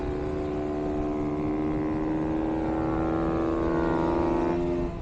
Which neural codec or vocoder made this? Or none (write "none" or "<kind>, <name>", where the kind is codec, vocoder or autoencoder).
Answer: none